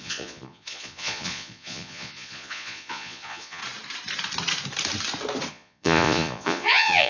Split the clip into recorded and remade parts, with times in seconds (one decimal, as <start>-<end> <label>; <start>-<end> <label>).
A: 0.0-3.6 remade; 3.6-5.5 recorded; 5.5-7.1 remade